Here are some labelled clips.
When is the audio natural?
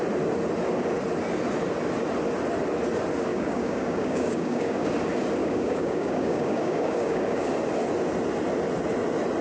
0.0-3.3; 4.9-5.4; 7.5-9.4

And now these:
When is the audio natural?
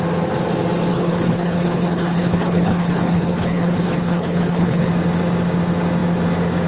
0.0-0.9; 4.9-6.7